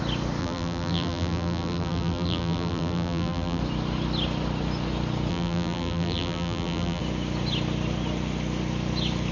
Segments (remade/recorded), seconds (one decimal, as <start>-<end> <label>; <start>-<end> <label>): 0.0-0.4 recorded; 0.4-3.6 remade; 3.6-5.3 recorded; 5.3-7.0 remade; 7.0-9.3 recorded